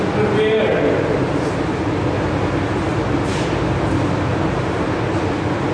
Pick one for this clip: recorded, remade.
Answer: recorded